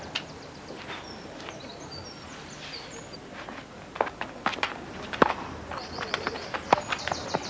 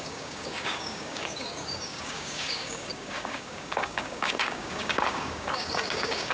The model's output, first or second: second